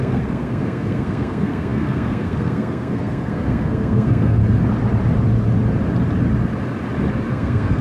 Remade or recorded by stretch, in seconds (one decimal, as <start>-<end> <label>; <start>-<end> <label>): 0.0-4.4 remade; 4.4-7.3 recorded; 7.3-7.8 remade